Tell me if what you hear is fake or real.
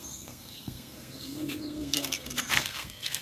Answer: fake